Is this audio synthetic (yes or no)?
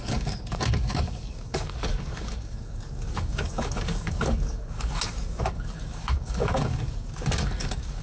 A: yes